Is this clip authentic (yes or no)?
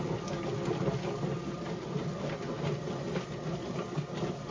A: yes